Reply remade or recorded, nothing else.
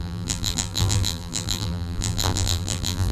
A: remade